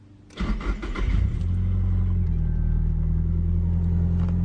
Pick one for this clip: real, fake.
real